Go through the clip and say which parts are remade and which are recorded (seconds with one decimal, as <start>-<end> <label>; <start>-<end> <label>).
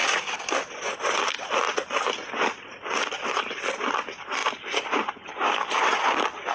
0.0-3.5 remade; 3.5-4.4 recorded; 4.4-5.3 remade; 5.3-6.5 recorded